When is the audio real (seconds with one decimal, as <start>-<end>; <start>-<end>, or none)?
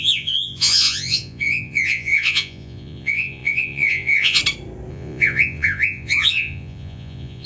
4.4-4.9